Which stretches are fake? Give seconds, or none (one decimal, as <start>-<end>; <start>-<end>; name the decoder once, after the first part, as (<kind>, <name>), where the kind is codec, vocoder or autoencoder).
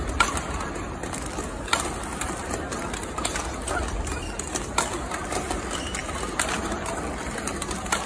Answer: none